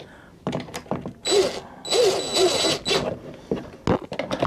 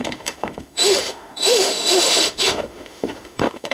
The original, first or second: first